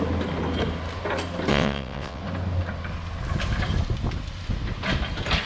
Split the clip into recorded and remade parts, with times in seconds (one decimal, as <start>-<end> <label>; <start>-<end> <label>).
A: 0.0-1.5 recorded; 1.5-2.2 remade; 2.2-5.5 recorded